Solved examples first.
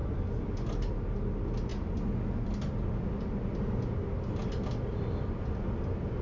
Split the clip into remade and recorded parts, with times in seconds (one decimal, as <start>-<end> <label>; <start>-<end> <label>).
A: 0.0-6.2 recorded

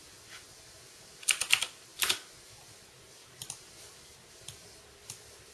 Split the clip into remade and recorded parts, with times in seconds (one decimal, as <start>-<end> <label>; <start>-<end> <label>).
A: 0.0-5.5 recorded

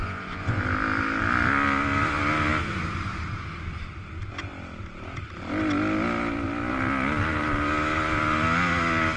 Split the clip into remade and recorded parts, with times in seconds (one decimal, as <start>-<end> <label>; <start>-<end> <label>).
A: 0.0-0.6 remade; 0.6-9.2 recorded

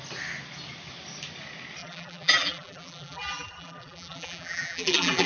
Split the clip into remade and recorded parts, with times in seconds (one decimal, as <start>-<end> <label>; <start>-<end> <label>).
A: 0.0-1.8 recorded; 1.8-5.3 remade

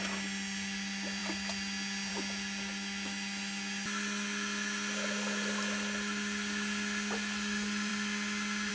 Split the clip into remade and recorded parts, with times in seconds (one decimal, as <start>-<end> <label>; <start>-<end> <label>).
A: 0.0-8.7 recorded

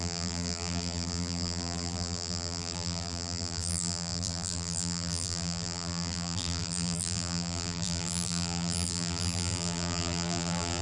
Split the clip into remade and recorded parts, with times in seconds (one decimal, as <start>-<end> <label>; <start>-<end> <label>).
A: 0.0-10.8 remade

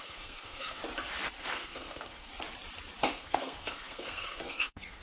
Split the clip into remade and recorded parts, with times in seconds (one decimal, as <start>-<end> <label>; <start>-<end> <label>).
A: 0.0-0.8 remade; 0.8-1.4 recorded; 1.4-2.3 remade; 2.3-3.1 recorded; 3.1-5.0 remade